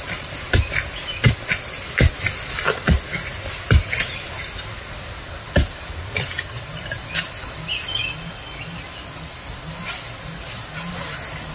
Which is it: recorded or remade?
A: recorded